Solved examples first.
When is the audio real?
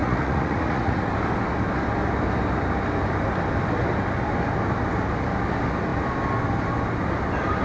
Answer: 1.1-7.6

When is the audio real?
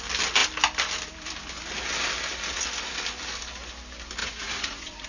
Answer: 0.0-4.2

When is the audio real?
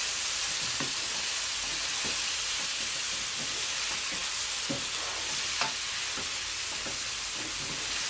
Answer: 0.0-8.1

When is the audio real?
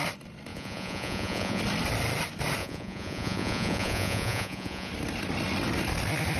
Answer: 0.0-0.5; 1.6-2.6; 4.9-6.4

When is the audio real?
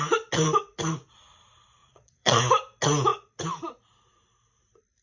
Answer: 0.0-1.8; 2.4-5.0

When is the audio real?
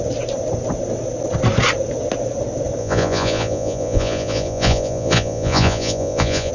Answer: 0.0-2.8